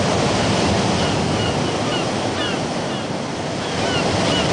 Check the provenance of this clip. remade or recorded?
recorded